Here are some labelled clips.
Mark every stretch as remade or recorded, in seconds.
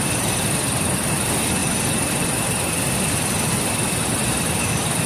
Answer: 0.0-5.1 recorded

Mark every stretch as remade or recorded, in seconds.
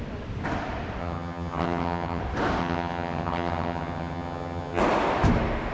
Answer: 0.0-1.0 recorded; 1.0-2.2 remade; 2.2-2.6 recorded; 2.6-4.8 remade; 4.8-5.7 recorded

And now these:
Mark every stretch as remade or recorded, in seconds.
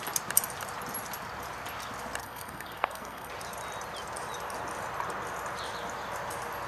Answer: 0.0-2.2 recorded; 2.2-3.3 remade; 3.3-6.7 recorded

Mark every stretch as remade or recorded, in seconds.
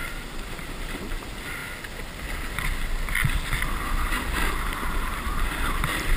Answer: 0.0-1.0 remade; 1.0-6.2 recorded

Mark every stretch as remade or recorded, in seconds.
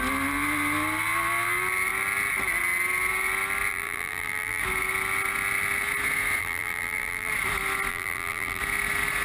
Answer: 0.0-3.7 recorded; 3.7-4.6 remade; 4.6-6.4 recorded; 6.4-7.3 remade; 7.3-7.9 recorded; 7.9-8.6 remade; 8.6-9.2 recorded